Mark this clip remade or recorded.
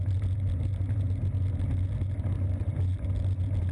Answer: recorded